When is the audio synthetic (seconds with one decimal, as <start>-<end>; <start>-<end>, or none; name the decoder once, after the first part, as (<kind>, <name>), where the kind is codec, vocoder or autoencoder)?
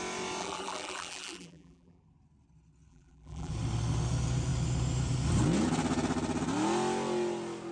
0.4-2.0 (vocoder, BigVGAN v2); 2.9-3.5